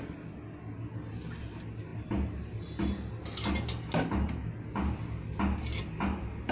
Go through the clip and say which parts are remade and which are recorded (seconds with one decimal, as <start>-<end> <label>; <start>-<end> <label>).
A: 0.0-6.5 recorded